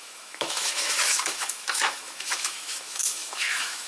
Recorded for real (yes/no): no